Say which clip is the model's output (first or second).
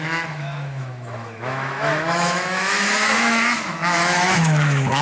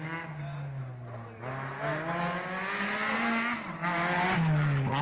first